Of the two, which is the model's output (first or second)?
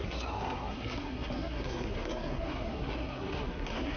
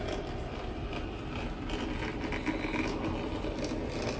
first